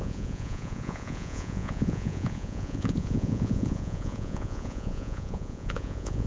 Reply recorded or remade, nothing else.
remade